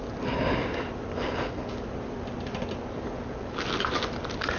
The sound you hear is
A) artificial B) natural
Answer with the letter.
B